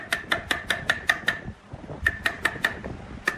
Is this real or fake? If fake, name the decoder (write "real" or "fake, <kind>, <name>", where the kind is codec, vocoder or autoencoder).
real